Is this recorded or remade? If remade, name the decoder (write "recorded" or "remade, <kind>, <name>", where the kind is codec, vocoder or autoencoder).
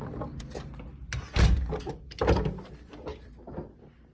recorded